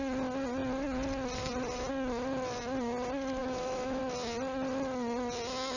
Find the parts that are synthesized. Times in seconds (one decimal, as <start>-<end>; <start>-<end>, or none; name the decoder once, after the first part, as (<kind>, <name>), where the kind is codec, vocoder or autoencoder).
3.4-4.0 (autoencoder, DAC-VAE)